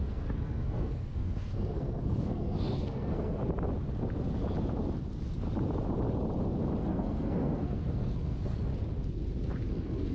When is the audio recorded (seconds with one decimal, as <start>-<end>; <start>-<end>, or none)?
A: 3.4-6.8; 8.7-9.7